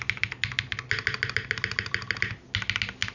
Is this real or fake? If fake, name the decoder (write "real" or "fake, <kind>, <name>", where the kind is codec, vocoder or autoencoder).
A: real